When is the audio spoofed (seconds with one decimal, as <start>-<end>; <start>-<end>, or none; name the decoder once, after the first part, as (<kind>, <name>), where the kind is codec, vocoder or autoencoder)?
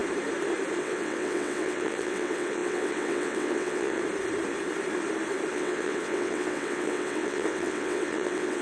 0.8-4.0 (vocoder, WaveNeXt); 5.5-8.6